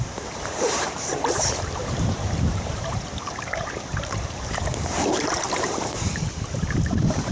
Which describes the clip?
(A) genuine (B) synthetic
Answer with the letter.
B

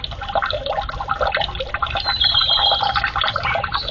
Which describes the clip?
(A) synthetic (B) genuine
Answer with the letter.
B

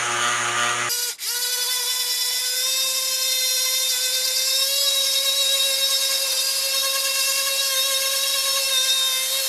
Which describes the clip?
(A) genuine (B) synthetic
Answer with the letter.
A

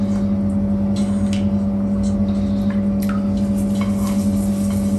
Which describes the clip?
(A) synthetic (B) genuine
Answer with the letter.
B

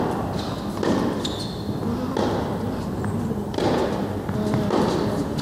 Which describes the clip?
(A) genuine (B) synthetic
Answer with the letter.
A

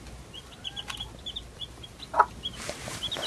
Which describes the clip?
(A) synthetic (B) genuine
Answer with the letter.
B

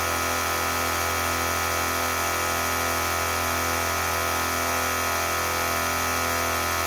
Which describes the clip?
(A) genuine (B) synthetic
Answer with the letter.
A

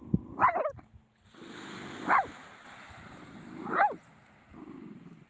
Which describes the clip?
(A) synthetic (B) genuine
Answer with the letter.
B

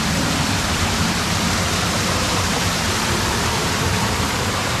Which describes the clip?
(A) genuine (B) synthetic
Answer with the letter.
B